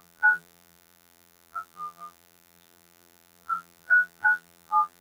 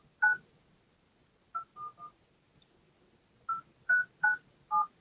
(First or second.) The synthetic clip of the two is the first